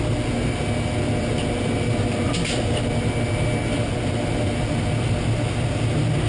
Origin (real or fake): real